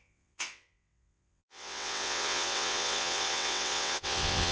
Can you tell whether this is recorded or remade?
remade